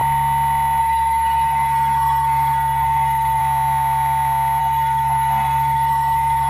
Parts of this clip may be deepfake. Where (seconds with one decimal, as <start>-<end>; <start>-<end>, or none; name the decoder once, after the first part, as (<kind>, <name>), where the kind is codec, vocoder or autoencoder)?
0.8-3.4 (codec, SNAC); 4.6-6.5